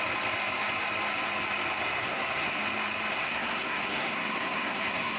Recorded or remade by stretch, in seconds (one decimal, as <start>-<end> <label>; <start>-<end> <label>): 0.0-1.8 recorded; 1.8-2.6 remade; 2.6-3.1 recorded; 3.1-5.2 remade